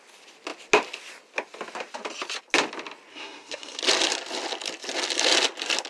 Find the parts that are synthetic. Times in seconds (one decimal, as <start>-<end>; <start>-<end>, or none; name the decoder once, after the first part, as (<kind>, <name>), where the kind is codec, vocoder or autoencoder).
3.1-3.8 (codec, SNAC)